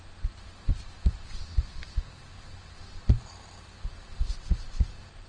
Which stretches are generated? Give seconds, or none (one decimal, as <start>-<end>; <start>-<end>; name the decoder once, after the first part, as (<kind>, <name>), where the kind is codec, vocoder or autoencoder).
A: none